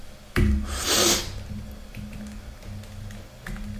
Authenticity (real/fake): real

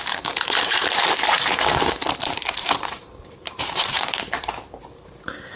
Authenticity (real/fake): fake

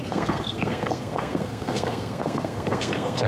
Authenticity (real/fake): fake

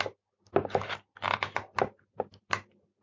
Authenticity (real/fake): real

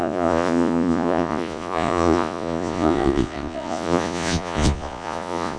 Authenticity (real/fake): fake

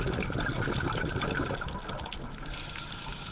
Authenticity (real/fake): real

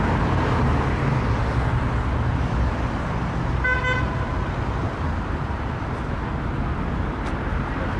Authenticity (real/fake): real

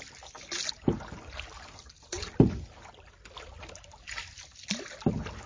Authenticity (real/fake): real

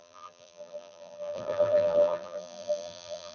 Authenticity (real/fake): fake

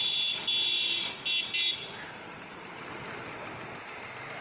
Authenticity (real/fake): real